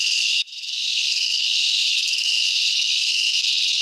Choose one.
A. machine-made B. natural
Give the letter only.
A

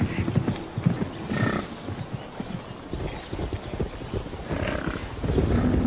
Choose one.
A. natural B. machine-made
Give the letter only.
A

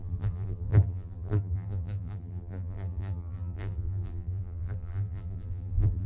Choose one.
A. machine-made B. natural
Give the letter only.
A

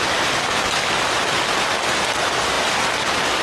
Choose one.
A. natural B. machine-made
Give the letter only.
A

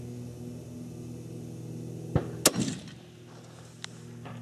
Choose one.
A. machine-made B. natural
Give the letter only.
B